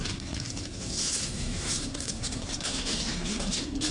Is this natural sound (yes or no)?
no